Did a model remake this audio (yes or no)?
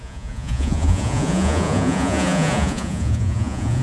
yes